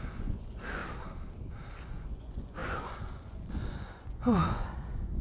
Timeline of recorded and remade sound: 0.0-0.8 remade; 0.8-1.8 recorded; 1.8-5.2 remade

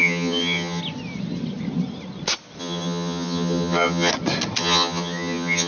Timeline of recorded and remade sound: 0.0-0.8 remade; 0.8-2.6 recorded; 2.6-4.1 remade; 4.1-4.6 recorded; 4.6-5.7 remade

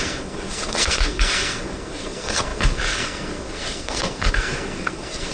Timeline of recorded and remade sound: 0.0-5.3 remade